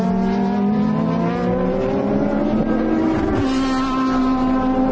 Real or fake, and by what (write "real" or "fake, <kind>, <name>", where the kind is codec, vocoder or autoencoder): real